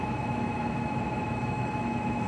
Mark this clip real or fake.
fake